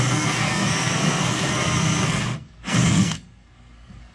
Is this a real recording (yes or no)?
no